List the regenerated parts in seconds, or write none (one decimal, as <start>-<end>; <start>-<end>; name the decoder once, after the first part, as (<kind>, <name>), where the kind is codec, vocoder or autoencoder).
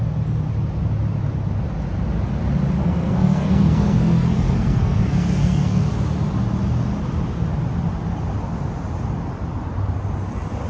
2.8-5.9 (codec, SNAC)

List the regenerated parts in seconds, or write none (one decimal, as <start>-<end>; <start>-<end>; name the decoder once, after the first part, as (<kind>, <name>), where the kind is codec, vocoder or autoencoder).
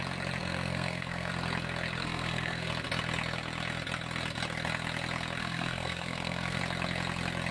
0.4-1.3 (codec, SNAC); 2.0-2.7; 5.4-6.6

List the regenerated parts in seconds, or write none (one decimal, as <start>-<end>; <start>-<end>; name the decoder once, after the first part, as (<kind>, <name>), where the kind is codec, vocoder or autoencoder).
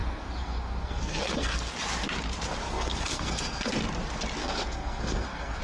0.0-1.7 (codec, SNAC); 2.6-3.7; 4.4-5.6